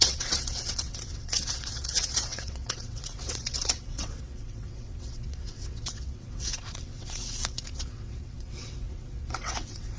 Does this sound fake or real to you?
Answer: fake